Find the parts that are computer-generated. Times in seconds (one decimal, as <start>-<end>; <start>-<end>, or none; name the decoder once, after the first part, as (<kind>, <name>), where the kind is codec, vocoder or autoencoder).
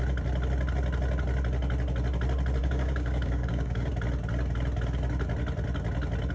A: 2.6-3.9 (codec, DAC)